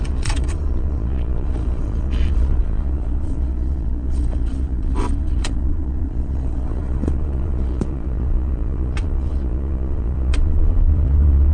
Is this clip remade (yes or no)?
yes